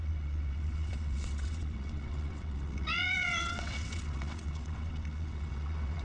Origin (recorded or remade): remade